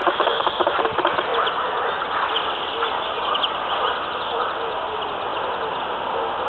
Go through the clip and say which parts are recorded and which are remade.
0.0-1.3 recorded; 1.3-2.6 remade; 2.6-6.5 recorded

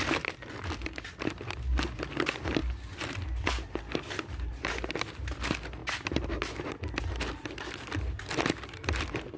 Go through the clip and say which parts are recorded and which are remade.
0.0-9.4 recorded

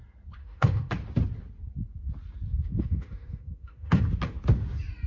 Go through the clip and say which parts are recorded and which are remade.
0.0-0.4 recorded; 0.4-0.9 remade; 0.9-2.5 recorded; 2.5-4.0 remade; 4.0-5.1 recorded

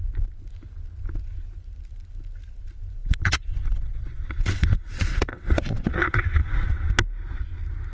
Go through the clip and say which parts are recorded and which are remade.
0.0-3.0 recorded; 3.0-6.9 remade; 6.9-7.9 recorded

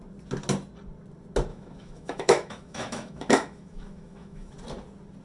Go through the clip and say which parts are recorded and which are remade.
0.0-1.5 recorded; 1.5-4.5 remade; 4.5-5.2 recorded

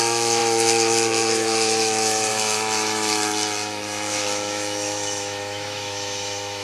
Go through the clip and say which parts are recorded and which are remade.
0.0-6.6 remade

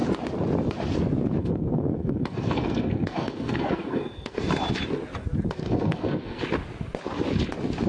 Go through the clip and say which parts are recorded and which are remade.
0.0-1.4 recorded; 1.4-4.4 remade; 4.4-5.6 recorded; 5.6-6.4 remade; 6.4-7.9 recorded

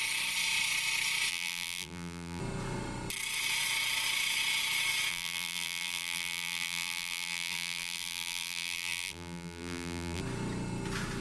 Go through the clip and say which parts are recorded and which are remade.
0.0-1.3 recorded; 1.3-2.4 remade; 2.4-5.1 recorded; 5.1-10.2 remade; 10.2-11.2 recorded